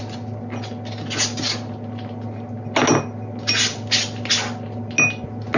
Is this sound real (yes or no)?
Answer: yes